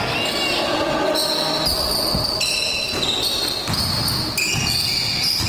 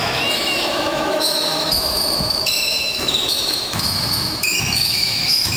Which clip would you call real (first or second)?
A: first